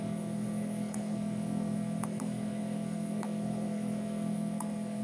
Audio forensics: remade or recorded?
remade